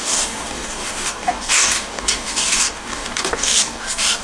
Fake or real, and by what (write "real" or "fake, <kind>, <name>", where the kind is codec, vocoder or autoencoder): fake, codec, DAC